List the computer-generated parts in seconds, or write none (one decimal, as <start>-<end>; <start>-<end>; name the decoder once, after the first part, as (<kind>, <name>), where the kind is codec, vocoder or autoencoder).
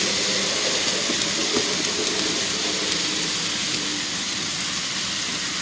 none